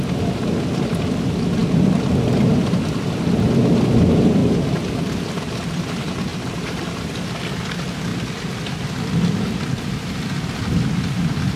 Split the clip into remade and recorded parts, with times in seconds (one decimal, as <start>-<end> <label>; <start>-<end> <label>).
0.0-4.4 recorded; 4.4-5.1 remade; 5.1-6.3 recorded; 6.3-6.9 remade; 6.9-8.1 recorded; 8.1-8.6 remade; 8.6-11.6 recorded